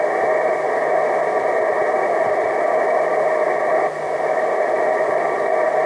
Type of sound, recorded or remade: recorded